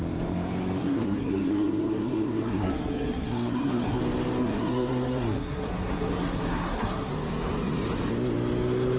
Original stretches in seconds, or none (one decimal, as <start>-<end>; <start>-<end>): 0.0-0.8; 4.0-4.4; 7.1-9.0